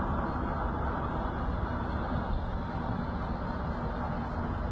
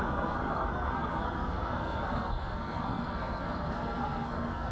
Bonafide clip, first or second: first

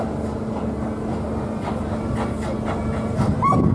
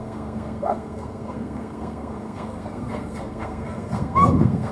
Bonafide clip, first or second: first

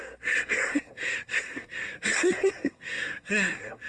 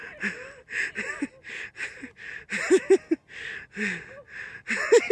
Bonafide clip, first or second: second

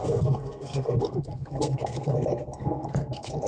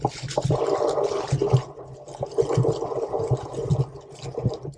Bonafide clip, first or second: second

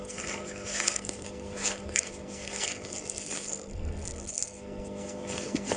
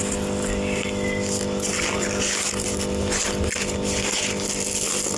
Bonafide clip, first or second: second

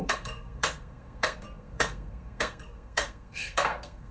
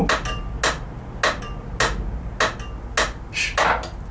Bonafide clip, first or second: second